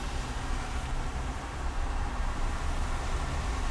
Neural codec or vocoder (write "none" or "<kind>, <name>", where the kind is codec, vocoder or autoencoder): none